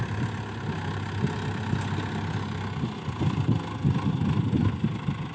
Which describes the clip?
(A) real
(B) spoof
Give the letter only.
A